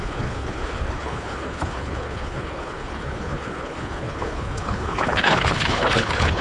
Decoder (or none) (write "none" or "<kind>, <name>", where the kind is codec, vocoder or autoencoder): codec, HILCodec